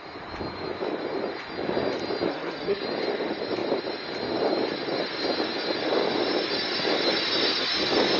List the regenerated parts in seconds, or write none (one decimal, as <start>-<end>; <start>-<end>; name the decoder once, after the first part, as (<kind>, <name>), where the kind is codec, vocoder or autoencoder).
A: 2.3-2.8 (codec, SNAC)